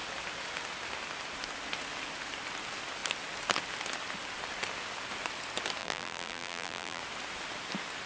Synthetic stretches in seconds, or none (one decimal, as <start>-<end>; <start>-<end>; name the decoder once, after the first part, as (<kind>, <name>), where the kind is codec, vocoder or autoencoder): 5.8-7.0 (vocoder, BigVGAN v2)